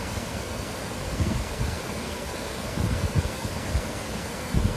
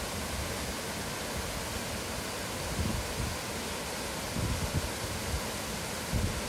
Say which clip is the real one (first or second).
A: second